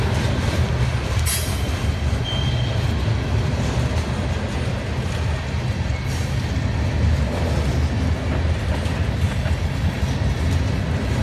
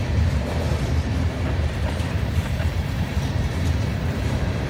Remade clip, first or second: second